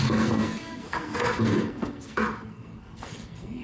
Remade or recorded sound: remade